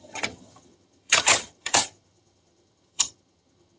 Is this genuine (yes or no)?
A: no